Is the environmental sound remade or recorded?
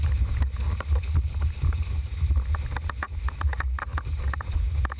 recorded